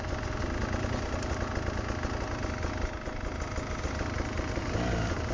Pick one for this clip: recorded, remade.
recorded